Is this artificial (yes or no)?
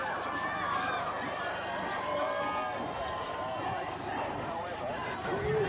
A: no